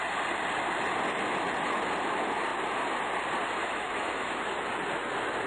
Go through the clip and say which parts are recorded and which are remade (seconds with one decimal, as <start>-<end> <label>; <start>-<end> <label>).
0.0-3.6 recorded; 3.6-4.3 remade; 4.3-5.5 recorded